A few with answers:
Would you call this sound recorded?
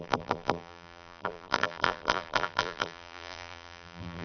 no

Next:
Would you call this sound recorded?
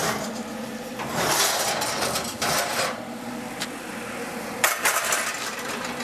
no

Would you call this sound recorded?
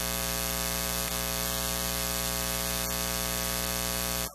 yes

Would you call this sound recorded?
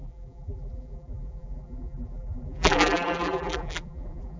no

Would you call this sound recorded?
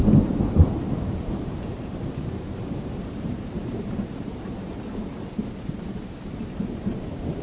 no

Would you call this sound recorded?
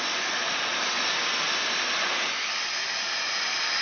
yes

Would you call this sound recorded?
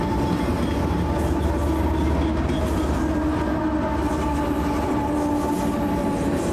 yes